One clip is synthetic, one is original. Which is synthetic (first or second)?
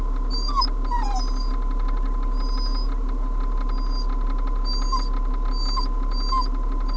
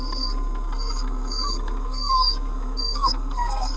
second